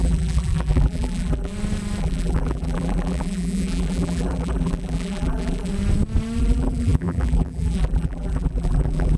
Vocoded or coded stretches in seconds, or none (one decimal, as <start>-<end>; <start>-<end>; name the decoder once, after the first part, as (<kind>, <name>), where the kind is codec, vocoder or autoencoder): 0.0-1.5 (vocoder, BigVGAN v2); 2.0-5.7; 6.4-9.2